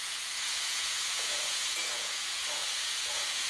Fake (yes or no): yes